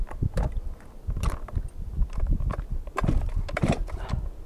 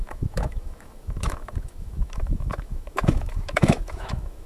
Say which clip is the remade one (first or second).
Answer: second